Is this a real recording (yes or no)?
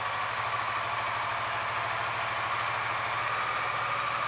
yes